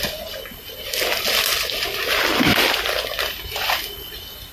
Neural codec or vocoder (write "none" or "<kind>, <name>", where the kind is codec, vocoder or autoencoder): none